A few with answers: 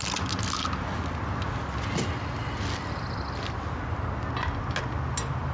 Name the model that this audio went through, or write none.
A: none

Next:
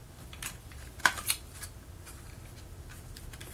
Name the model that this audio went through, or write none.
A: none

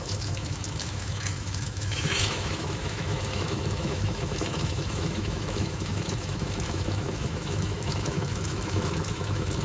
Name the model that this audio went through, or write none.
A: autoencoder, DAC-VAE